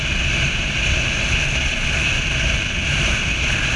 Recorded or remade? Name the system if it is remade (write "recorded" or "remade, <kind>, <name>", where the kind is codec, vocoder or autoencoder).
recorded